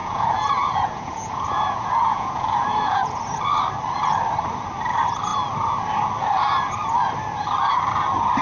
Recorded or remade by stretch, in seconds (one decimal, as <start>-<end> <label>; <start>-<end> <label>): 0.0-3.2 remade; 3.2-8.4 recorded